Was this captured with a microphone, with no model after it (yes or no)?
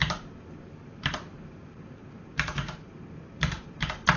no